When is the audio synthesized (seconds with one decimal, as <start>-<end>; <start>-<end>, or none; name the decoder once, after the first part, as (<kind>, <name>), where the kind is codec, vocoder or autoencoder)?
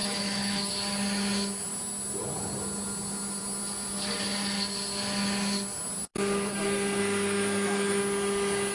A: 0.0-0.7 (autoencoder, DAC-VAE); 7.0-8.0